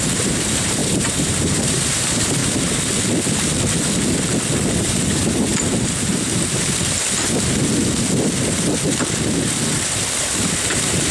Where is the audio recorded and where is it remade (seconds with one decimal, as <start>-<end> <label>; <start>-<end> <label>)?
0.0-2.4 remade; 2.4-4.8 recorded; 4.8-5.5 remade; 5.5-10.2 recorded; 10.2-11.1 remade